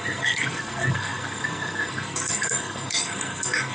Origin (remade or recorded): remade